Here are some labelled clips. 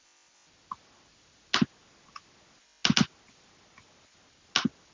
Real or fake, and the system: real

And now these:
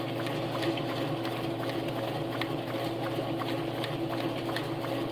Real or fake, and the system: real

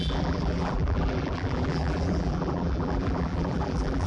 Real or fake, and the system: fake, vocoder, BigVGAN v2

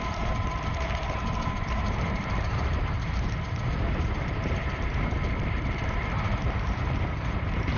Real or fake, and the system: fake, vocoder, BigVGAN v2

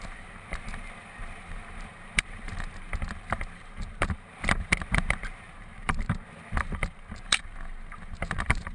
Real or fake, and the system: fake, vocoder, BigVGAN v2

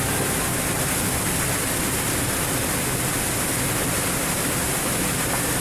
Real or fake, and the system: real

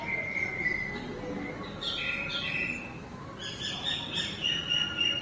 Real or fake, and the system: real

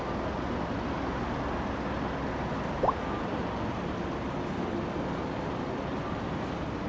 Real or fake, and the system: real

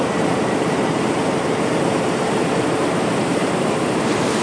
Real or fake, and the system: fake, vocoder, BigVGAN v2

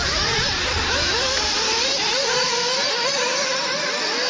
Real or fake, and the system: fake, vocoder, BigVGAN v2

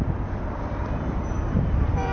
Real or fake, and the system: fake, vocoder, BigVGAN v2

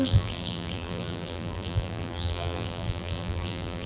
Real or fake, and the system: fake, vocoder, BigVGAN v2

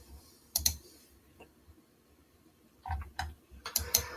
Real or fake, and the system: fake, vocoder, BigVGAN v2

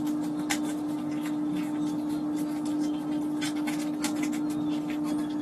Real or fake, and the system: real